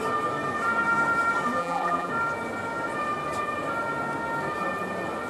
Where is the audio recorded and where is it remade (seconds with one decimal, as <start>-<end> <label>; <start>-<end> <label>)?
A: 0.0-1.6 recorded; 1.6-2.1 remade; 2.1-5.3 recorded